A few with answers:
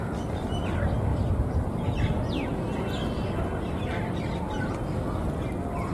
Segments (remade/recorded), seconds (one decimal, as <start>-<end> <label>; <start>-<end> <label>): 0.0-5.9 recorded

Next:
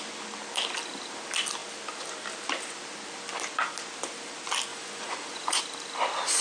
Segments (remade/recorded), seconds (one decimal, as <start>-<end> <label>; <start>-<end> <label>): 0.0-4.7 recorded; 4.7-5.6 remade; 5.6-6.4 recorded

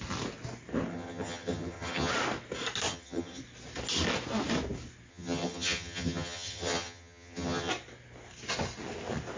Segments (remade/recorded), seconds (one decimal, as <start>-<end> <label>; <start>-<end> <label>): 0.0-0.9 recorded; 0.9-2.1 remade; 2.1-2.9 recorded; 2.9-3.4 remade; 3.4-5.1 recorded; 5.1-7.7 remade; 7.7-9.4 recorded